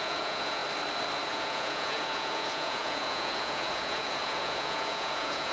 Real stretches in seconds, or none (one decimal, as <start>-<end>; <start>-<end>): 0.6-1.3